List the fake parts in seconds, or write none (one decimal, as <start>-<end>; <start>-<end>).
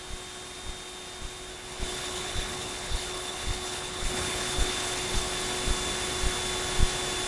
1.5-5.3